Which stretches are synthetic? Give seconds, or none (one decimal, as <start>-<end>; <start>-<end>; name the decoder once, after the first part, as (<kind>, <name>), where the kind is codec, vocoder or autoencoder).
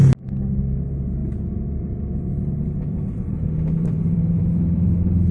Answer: 1.2-4.4 (vocoder, BigVGAN v2)